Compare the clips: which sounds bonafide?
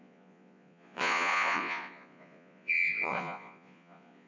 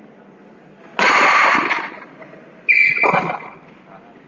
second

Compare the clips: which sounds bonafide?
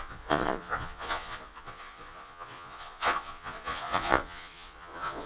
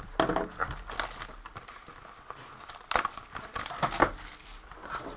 second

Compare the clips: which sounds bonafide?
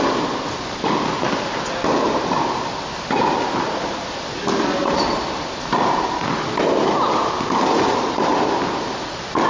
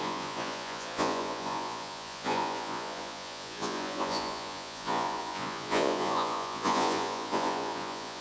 first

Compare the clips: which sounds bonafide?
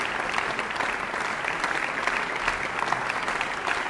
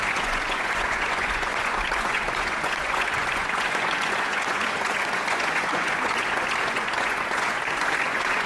first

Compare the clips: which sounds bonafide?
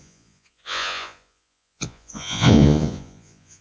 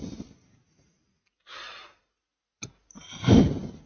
second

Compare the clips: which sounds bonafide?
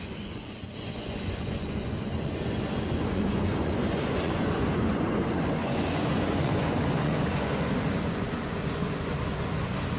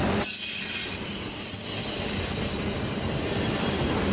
second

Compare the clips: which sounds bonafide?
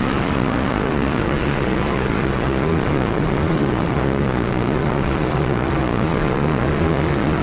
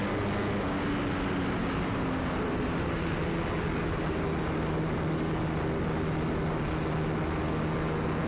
second